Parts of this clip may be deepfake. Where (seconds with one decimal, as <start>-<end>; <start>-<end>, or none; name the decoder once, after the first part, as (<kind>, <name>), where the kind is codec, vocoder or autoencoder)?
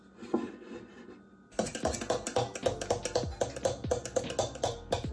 none